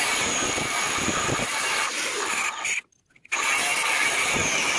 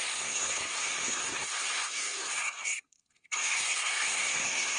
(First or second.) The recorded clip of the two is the first